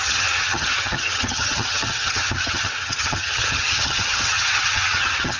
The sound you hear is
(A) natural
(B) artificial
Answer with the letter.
B